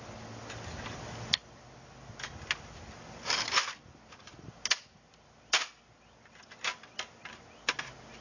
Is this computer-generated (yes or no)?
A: no